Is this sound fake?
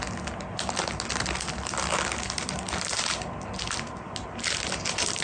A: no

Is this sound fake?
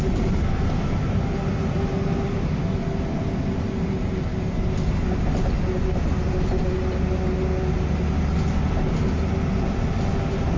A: no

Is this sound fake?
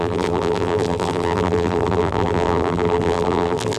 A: yes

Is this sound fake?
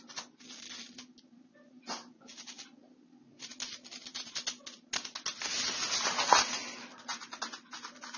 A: no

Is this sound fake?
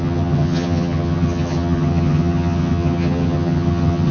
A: yes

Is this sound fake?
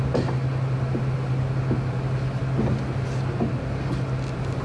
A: no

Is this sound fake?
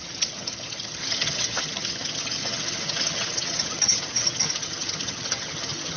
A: yes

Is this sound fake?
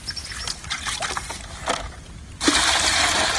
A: no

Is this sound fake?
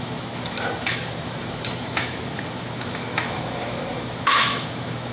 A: yes